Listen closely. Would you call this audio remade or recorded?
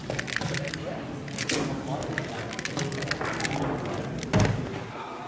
recorded